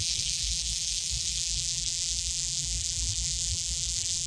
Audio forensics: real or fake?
fake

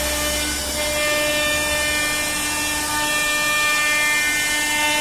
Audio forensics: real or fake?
real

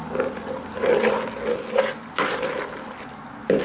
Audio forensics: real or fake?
real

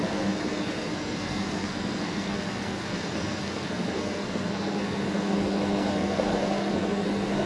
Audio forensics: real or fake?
fake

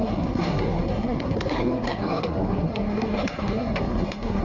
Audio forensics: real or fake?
fake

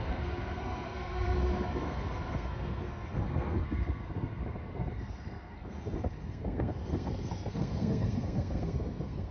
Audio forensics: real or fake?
fake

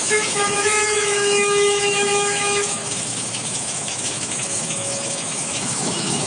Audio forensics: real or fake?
fake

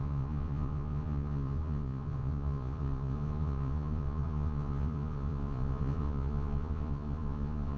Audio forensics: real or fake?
fake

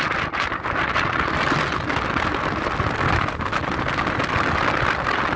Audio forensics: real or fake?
real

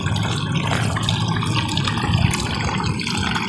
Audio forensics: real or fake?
real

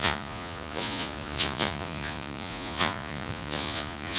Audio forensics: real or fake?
fake